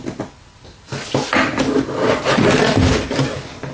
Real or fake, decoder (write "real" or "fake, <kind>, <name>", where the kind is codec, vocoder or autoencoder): real